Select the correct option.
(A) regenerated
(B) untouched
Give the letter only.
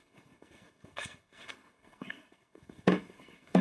A